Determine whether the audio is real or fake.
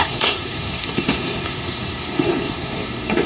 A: fake